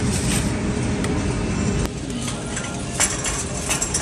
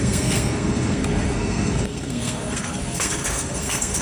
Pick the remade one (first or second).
second